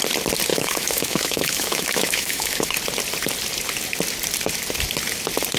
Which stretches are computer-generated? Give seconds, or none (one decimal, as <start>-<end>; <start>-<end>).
0.5-2.7